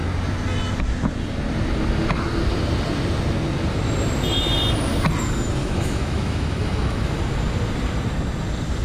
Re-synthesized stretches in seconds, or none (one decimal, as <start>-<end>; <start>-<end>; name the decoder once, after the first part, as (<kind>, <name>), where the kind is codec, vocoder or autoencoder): 5.6-7.2 (autoencoder, DAC-VAE)